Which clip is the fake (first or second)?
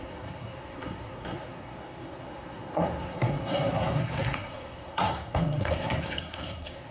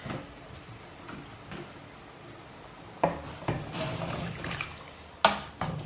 first